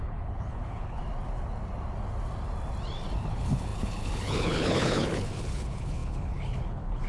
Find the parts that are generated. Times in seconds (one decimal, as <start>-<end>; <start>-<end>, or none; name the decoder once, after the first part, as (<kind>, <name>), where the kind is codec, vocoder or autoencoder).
0.0-1.0 (codec, HILCodec); 3.2-7.1